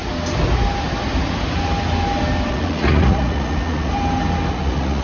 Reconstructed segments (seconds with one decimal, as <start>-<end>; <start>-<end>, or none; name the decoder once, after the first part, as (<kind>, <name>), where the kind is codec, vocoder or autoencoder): 2.5-3.9 (vocoder, Vocos); 4.5-5.0